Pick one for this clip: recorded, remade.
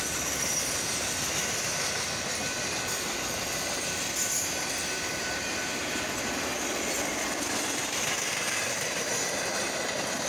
recorded